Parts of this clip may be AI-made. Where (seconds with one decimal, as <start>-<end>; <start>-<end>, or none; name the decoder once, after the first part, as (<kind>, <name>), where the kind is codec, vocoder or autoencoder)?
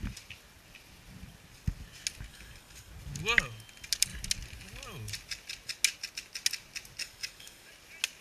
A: 2.3-2.9 (codec, DAC); 7.0-7.7